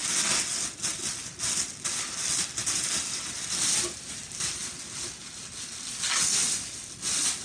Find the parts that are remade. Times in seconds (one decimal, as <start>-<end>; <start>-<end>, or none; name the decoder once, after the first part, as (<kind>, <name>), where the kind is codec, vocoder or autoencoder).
none